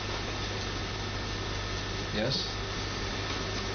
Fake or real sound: real